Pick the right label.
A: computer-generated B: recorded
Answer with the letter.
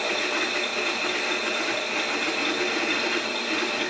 B